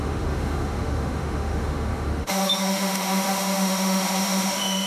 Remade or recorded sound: remade